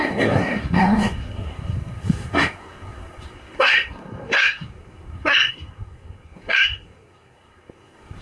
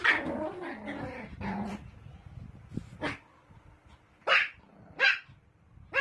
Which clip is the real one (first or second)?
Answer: second